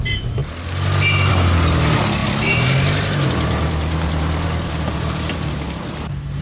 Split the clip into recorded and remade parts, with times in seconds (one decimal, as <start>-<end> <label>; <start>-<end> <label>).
0.0-2.2 recorded; 2.2-5.5 remade; 5.5-6.4 recorded